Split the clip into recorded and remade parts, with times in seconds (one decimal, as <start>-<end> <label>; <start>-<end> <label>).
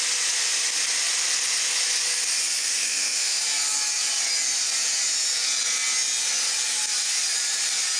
0.0-2.6 recorded; 2.6-3.4 remade; 3.4-8.0 recorded